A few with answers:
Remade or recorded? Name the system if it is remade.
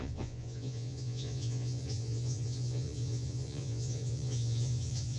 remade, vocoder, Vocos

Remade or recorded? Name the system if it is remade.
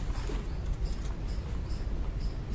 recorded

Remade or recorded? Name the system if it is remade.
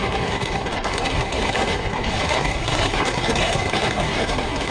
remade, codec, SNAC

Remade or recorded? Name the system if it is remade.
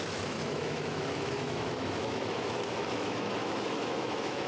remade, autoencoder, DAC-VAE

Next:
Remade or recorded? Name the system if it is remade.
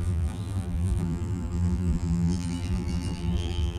remade, vocoder, BigVGAN v2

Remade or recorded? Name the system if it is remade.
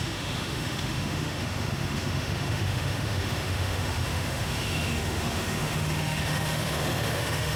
remade, autoencoder, DAC-VAE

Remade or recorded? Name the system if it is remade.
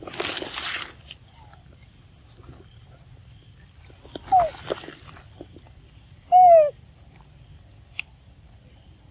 recorded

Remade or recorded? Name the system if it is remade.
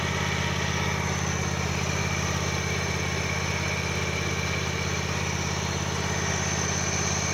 recorded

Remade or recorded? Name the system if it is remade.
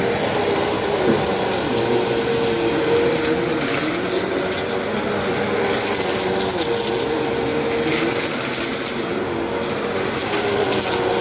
recorded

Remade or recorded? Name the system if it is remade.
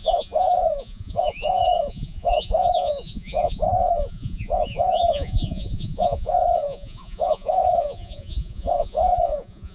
remade, vocoder, Vocos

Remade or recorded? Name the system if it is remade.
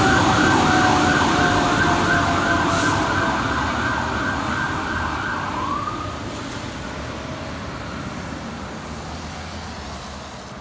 recorded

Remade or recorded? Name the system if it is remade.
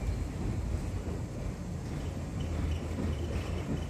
recorded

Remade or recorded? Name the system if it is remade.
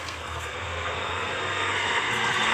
remade, codec, SNAC